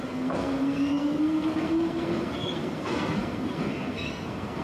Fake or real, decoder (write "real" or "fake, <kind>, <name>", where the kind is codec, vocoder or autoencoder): fake, codec, SNAC